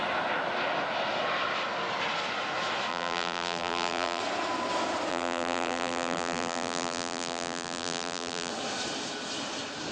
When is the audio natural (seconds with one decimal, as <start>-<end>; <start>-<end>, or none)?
0.0-2.9; 4.2-5.1; 8.5-9.9